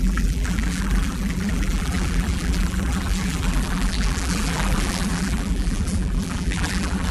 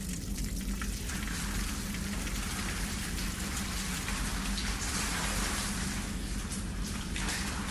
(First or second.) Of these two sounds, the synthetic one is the first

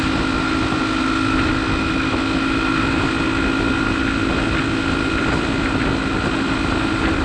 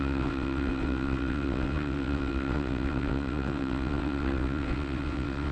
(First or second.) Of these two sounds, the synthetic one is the second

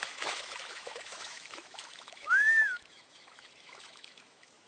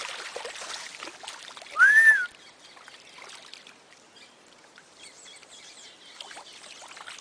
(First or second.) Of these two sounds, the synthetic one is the first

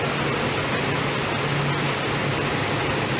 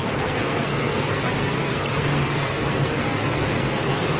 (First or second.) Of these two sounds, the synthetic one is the second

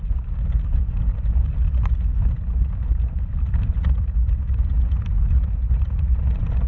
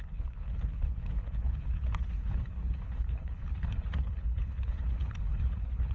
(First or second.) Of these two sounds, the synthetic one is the second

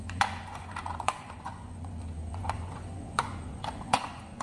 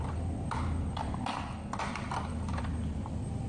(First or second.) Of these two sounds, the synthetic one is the first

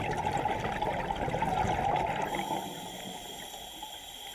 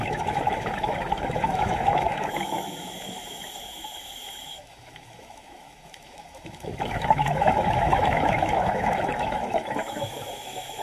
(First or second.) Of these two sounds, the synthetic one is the second